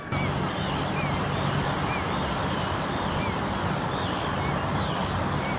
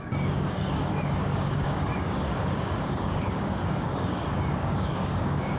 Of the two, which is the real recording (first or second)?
first